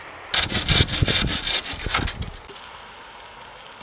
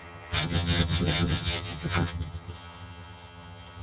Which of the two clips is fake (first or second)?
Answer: second